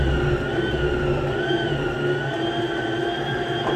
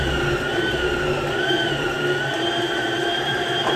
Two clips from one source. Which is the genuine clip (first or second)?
first